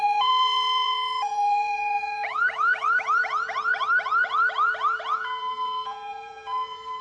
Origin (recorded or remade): remade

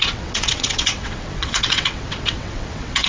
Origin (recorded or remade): remade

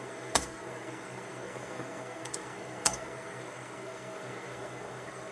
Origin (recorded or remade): remade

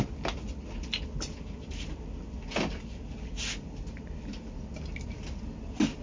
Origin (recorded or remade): recorded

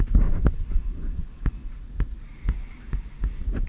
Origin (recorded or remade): recorded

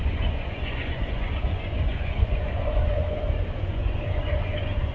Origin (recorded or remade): remade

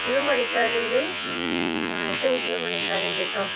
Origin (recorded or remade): remade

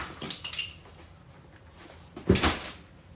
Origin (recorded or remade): remade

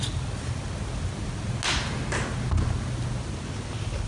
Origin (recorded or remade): recorded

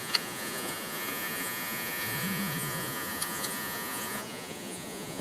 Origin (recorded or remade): remade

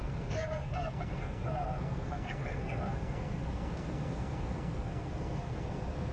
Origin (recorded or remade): remade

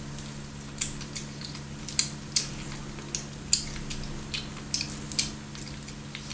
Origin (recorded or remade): recorded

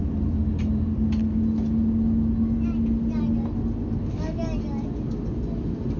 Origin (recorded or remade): recorded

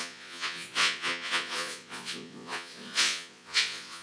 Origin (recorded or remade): remade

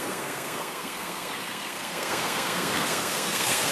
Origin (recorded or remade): remade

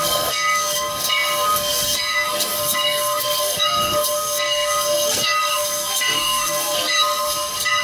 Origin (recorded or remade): remade